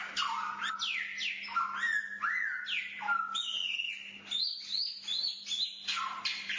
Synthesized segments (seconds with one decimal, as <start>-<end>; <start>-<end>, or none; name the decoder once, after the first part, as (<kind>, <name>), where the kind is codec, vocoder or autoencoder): none